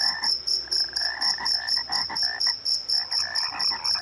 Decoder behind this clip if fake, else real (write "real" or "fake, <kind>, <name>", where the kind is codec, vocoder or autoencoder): real